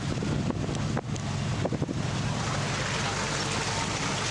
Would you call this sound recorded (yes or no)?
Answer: yes